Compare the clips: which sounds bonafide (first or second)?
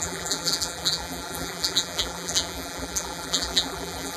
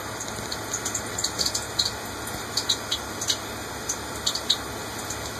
second